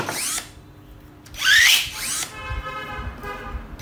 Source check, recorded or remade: recorded